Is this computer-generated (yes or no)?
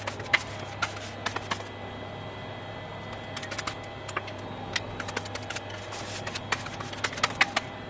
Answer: no